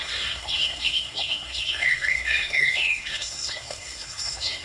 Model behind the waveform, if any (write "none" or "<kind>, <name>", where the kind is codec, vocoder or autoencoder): codec, SNAC